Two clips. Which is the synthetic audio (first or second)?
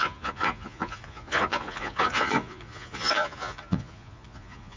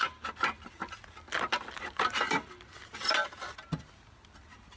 first